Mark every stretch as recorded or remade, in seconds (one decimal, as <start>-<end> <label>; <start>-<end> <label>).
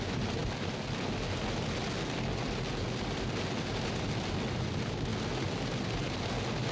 0.0-6.7 recorded